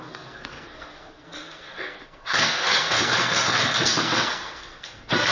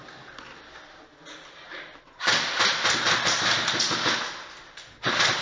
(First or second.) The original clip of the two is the second